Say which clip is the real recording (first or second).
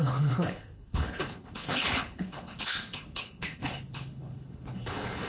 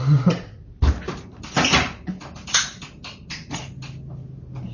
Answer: second